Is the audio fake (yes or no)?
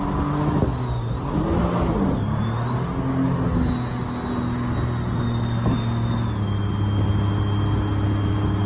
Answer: no